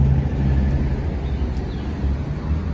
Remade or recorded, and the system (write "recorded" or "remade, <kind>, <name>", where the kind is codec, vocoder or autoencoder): recorded